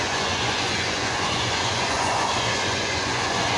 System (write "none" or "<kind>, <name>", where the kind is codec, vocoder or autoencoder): vocoder, Vocos